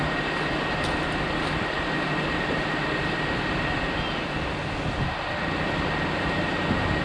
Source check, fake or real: real